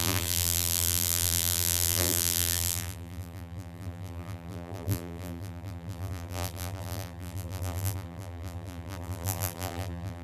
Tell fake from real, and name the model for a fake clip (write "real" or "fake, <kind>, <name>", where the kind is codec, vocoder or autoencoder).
fake, vocoder, BigVGAN v2